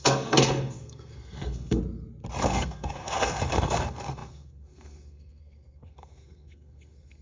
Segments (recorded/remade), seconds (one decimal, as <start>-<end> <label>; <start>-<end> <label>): 0.0-1.8 remade; 1.8-2.4 recorded; 2.4-7.2 remade

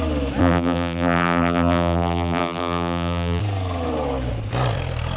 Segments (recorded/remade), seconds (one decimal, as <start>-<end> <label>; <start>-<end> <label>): 0.0-0.4 recorded; 0.4-3.4 remade; 3.4-5.2 recorded

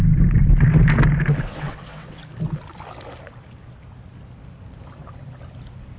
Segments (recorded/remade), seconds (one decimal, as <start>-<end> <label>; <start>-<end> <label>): 0.0-1.4 recorded; 1.4-2.2 remade; 2.2-6.0 recorded